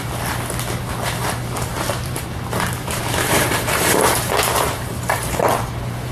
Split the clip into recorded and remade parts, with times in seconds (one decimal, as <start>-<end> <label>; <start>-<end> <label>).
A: 0.0-1.7 recorded; 1.7-5.4 remade; 5.4-6.1 recorded